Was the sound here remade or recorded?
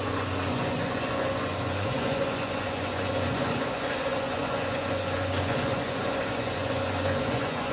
remade